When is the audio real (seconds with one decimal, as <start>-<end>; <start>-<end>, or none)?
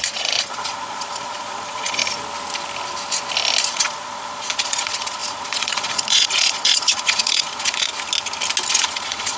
2.0-3.7; 7.9-8.7